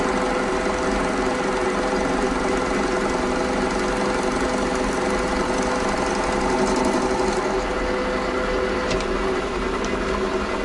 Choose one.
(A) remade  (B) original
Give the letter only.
B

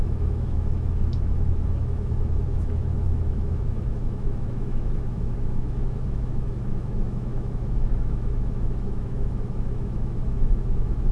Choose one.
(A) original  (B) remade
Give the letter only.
B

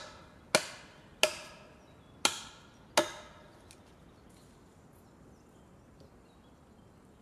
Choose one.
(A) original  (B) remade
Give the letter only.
A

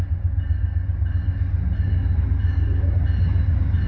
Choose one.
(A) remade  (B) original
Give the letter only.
B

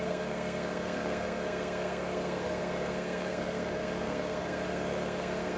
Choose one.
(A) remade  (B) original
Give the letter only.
A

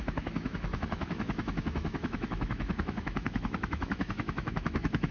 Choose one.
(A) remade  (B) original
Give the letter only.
A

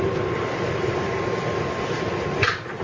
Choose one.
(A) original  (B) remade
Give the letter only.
A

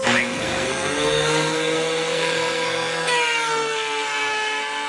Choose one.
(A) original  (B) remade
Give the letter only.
B